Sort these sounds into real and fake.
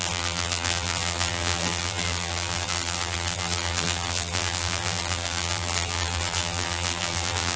fake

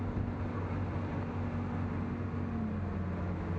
real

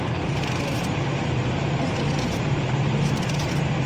real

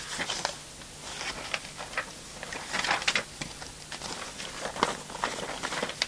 real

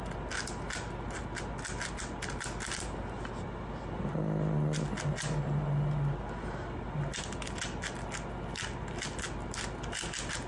real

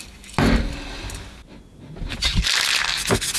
real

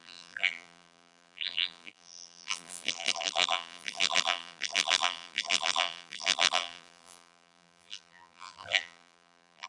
fake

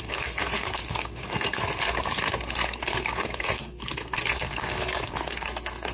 fake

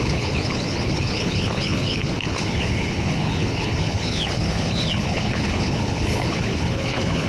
fake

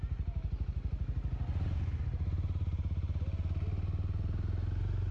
real